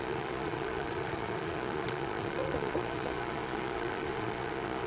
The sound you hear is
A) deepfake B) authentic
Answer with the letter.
A